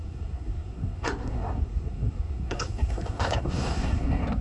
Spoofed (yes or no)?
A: yes